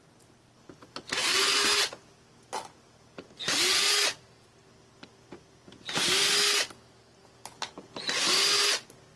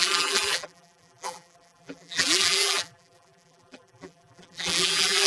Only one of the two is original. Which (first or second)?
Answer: first